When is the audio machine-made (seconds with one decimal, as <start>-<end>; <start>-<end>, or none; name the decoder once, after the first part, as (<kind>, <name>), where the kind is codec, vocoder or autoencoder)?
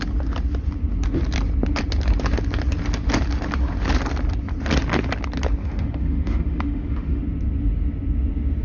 5.6-7.2 (autoencoder, DAC-VAE)